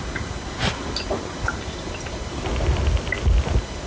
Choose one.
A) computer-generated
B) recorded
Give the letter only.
B